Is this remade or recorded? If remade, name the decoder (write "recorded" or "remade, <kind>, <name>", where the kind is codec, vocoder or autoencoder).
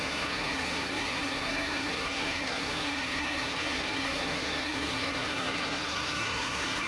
remade, codec, SNAC